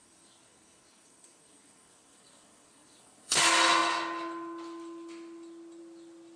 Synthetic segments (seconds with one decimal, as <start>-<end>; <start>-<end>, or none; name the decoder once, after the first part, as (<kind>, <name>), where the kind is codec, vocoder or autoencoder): 0.0-3.4 (codec, SNAC)